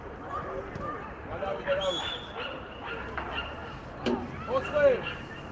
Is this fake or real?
real